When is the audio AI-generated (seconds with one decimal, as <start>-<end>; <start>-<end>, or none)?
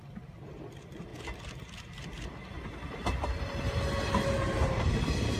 none